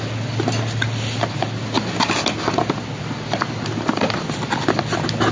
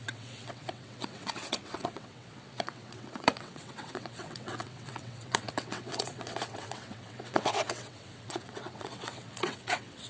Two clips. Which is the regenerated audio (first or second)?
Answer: second